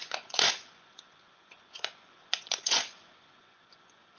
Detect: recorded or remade remade